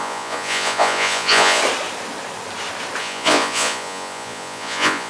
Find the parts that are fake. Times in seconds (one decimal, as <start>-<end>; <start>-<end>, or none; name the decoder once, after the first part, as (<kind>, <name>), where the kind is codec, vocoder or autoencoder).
0.0-1.6 (vocoder, Vocos); 3.0-5.1